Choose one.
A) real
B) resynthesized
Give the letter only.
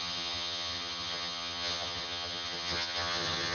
B